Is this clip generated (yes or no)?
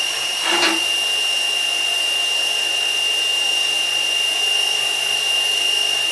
no